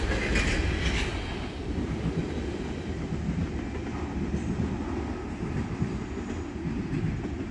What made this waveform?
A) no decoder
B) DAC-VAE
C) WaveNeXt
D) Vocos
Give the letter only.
A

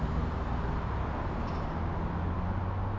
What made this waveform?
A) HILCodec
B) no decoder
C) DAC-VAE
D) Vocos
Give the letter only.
B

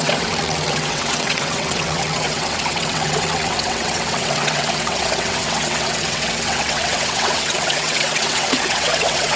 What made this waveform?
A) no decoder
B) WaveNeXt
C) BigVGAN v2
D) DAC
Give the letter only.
B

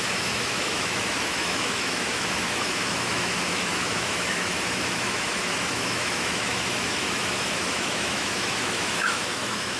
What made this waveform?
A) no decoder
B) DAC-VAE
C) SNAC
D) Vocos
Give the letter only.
B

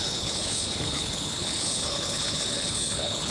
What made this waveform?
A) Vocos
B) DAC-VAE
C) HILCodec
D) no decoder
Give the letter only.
C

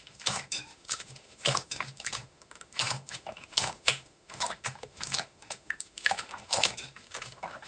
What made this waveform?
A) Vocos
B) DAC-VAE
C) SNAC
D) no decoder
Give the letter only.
B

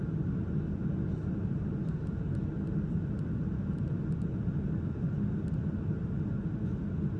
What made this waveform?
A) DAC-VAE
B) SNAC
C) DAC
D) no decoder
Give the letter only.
D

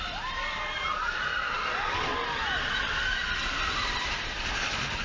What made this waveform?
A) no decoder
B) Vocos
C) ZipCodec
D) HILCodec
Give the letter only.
A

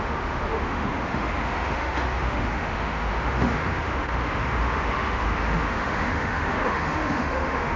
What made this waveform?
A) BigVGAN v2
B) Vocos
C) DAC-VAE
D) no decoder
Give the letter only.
C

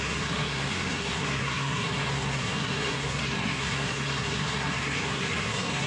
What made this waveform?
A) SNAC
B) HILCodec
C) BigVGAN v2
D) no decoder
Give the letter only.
A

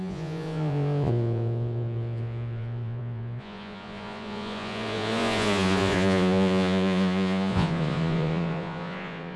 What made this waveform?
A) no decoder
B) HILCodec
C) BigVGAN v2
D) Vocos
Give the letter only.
D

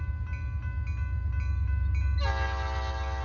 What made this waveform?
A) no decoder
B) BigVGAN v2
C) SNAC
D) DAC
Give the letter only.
A